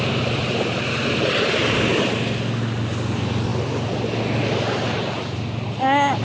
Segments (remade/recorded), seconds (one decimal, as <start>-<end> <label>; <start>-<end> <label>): 0.0-6.2 recorded